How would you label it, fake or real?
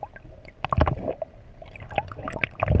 real